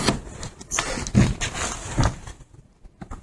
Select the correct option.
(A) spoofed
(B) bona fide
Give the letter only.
B